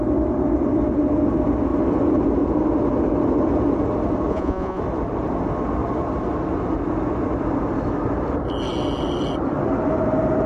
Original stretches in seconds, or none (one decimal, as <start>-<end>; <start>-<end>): 0.0-4.3; 4.8-10.5